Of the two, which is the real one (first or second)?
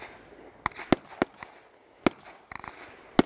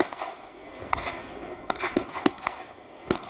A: first